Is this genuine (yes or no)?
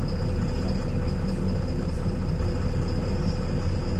yes